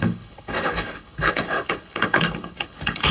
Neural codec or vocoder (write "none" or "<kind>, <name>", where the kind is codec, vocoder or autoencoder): codec, HILCodec